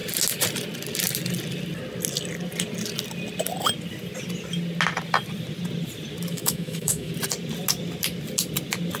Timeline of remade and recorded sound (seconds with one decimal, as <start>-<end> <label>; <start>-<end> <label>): 0.0-6.3 recorded; 6.3-7.1 remade; 7.1-9.0 recorded

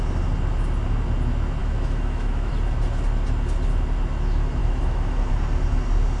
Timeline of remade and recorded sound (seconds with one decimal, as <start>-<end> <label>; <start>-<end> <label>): 0.0-1.6 recorded; 1.6-2.5 remade; 2.5-4.6 recorded; 4.6-5.3 remade; 5.3-6.2 recorded

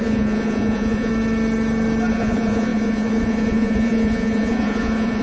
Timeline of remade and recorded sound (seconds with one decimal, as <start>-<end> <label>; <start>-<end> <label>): 0.0-1.1 remade; 1.1-2.1 recorded; 2.1-5.2 remade